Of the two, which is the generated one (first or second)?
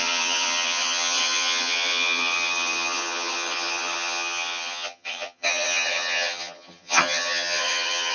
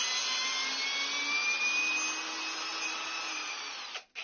first